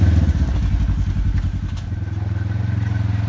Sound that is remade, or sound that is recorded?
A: recorded